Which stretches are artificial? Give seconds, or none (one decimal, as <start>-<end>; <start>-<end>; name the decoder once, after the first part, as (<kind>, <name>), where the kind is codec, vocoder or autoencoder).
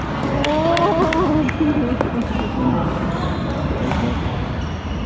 none